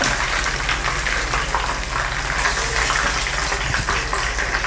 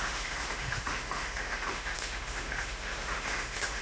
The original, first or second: first